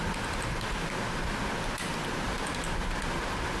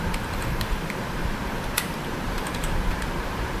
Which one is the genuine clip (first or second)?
first